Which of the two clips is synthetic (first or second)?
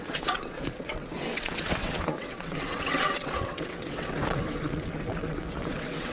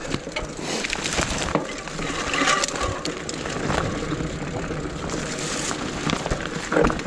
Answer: first